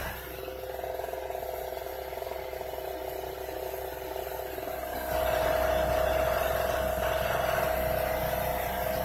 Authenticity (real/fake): real